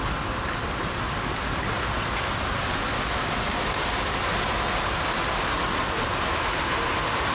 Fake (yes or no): no